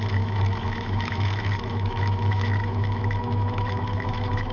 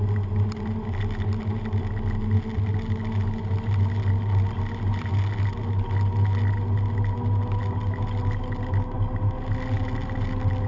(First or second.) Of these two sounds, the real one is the second